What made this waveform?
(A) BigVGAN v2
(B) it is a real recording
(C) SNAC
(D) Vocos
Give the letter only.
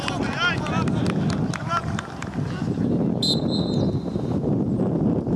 B